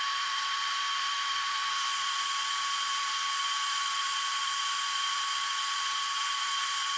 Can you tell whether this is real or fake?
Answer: fake